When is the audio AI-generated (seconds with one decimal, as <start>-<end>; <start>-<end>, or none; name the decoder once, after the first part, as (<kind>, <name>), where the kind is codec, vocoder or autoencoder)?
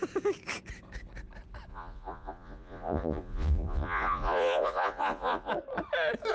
1.7-5.5 (vocoder, Vocos)